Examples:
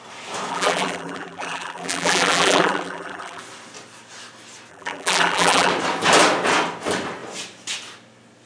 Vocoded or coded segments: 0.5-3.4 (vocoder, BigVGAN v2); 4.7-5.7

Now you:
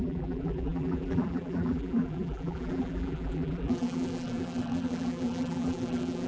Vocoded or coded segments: 0.0-6.3 (vocoder, BigVGAN v2)